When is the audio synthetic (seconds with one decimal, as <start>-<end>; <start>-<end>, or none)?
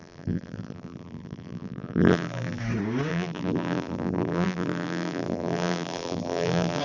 0.0-2.6; 3.1-6.8